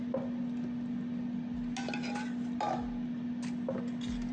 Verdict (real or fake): real